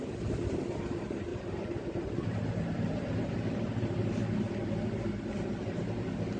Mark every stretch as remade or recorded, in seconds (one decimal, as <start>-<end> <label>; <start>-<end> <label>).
0.0-1.3 recorded; 1.3-4.7 remade; 4.7-6.4 recorded